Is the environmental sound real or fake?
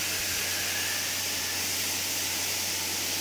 real